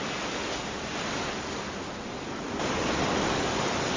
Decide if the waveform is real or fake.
real